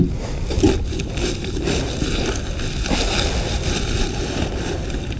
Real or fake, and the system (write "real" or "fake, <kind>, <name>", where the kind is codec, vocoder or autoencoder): real